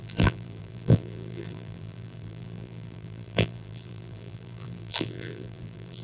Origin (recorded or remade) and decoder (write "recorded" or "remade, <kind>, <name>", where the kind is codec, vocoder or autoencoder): remade, vocoder, BigVGAN v2